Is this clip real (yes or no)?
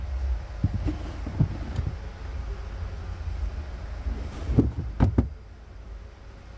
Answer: yes